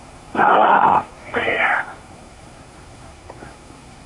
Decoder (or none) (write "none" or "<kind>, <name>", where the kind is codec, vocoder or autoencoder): codec, SNAC